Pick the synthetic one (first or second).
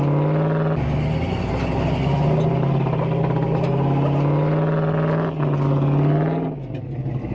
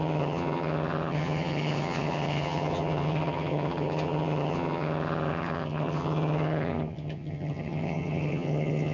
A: second